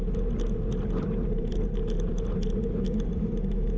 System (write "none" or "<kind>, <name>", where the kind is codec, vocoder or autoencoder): none